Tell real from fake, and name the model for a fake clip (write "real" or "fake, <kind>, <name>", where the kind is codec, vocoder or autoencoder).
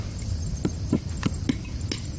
real